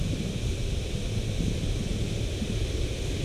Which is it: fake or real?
real